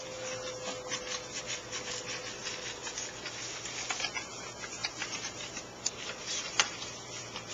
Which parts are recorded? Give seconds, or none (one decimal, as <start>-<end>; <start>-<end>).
0.0-4.8; 6.9-7.5